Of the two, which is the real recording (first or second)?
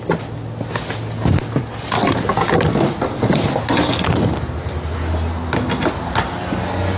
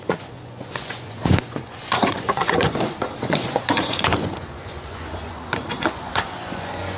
first